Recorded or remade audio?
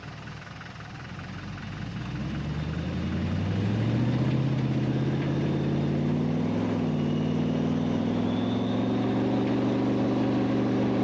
recorded